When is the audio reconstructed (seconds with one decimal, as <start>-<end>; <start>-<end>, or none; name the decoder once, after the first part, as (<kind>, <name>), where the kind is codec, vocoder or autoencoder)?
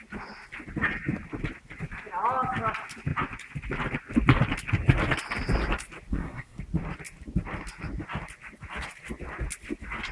6.1-6.6 (codec, SNAC)